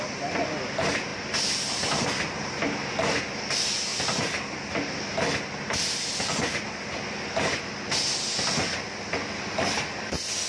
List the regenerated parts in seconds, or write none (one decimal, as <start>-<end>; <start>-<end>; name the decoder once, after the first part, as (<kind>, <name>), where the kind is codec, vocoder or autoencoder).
none